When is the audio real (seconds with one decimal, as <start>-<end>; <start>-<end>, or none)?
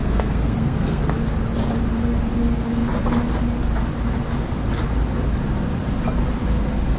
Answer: 1.0-7.0